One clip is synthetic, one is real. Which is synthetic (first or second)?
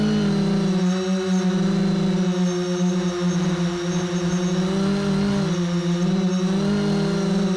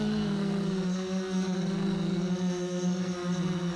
second